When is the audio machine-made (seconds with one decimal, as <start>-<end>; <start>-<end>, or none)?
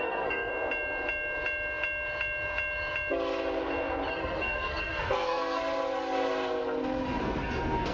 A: 0.0-0.5; 4.1-5.6; 7.2-7.9